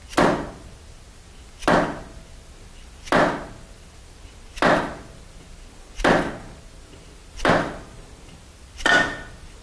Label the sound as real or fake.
real